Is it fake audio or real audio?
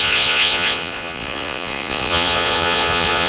fake